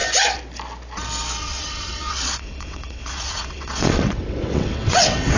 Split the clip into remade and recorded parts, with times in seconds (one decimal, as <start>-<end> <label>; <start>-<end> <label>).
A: 0.0-1.4 recorded; 1.4-5.4 remade